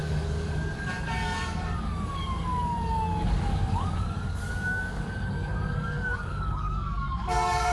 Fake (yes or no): yes